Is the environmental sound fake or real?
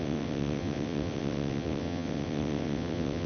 fake